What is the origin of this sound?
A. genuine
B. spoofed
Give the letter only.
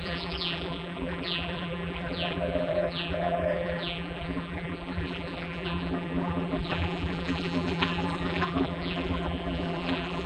B